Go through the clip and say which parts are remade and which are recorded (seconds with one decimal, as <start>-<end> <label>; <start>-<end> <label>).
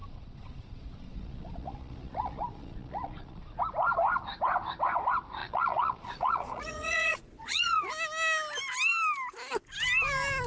0.0-3.6 remade; 3.6-5.4 recorded; 5.4-7.9 remade; 7.9-10.5 recorded